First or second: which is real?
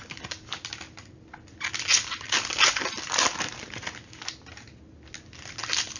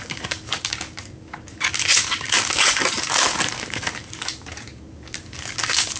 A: first